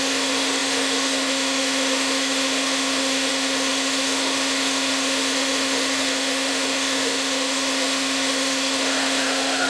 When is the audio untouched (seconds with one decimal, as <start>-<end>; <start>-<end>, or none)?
none